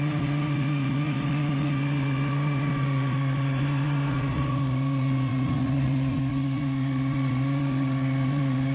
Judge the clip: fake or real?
fake